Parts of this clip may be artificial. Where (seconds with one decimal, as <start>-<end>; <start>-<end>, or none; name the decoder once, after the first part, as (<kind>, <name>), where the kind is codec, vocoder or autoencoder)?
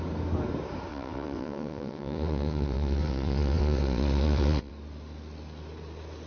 0.9-4.7 (vocoder, WaveNeXt)